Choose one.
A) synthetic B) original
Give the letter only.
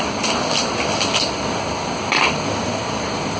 B